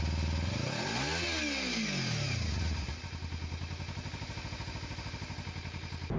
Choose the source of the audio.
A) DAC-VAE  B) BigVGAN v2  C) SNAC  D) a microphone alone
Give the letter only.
D